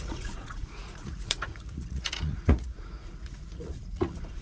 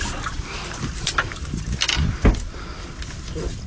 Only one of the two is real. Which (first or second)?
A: second